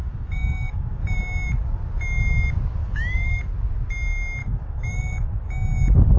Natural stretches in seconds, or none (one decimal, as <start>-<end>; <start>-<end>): 1.0-2.8; 3.4-4.4; 5.3-6.2